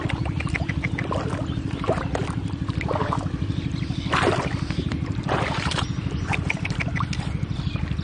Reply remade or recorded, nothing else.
remade